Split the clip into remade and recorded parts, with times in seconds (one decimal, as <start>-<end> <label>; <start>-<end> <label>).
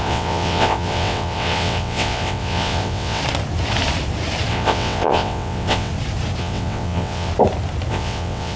0.0-3.2 remade; 3.2-4.5 recorded; 4.5-5.9 remade; 5.9-6.4 recorded; 6.4-7.3 remade; 7.3-7.9 recorded; 7.9-8.6 remade